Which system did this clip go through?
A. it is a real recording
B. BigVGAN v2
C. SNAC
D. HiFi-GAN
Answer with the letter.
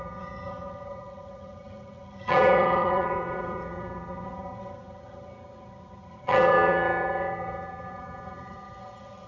D